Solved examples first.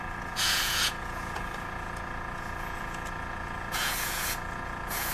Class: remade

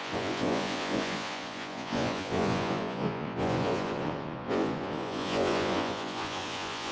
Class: remade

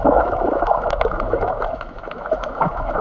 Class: remade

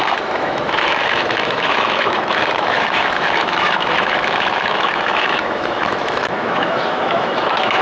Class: remade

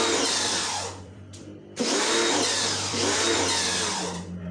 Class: remade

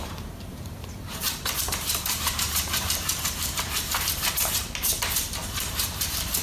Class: remade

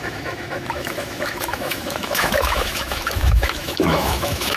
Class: remade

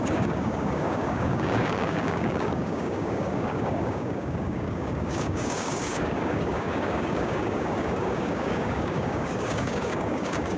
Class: remade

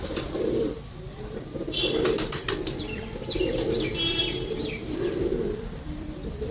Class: remade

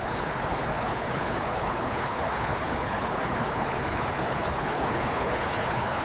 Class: remade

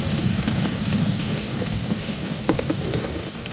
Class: remade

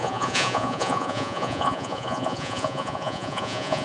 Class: remade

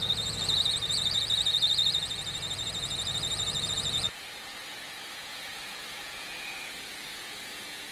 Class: remade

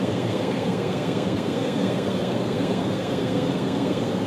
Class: remade